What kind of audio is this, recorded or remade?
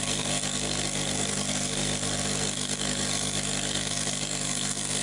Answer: remade